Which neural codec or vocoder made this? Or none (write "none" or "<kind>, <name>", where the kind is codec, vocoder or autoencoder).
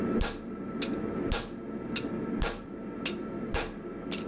none